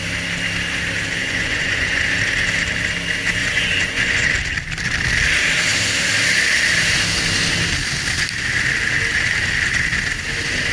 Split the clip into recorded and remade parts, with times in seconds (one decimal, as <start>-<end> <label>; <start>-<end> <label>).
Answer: 0.0-1.2 recorded; 1.2-2.0 remade; 2.0-3.4 recorded; 3.4-4.3 remade; 4.3-10.7 recorded